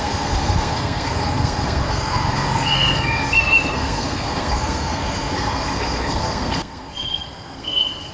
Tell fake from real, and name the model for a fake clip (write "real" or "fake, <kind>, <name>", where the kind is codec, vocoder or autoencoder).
fake, codec, SNAC